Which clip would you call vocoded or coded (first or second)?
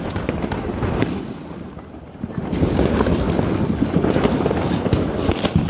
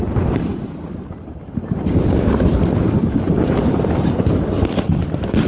second